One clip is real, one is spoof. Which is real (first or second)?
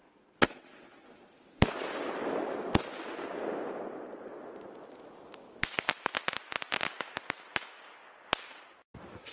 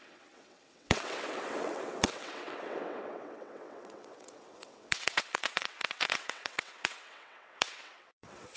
first